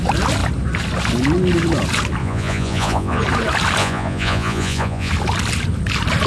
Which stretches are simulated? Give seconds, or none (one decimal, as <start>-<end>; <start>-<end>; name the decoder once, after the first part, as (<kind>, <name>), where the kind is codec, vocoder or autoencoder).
2.2-3.2 (vocoder, Vocos); 3.8-5.1